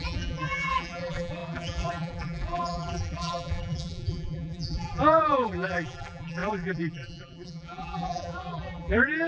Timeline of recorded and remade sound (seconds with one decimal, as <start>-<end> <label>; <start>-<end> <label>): 0.0-9.3 remade